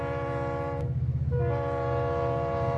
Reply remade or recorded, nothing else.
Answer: recorded